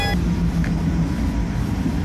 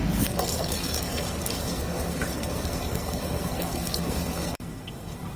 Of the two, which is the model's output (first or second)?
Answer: second